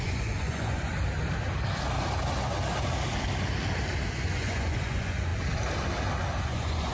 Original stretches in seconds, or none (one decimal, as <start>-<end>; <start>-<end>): 0.9-4.1; 5.3-6.4